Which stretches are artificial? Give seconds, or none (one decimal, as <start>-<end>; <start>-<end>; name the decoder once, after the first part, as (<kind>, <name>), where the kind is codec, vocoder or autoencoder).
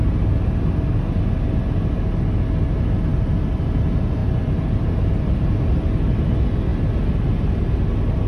3.1-3.7 (vocoder, BigVGAN v2); 4.2-6.1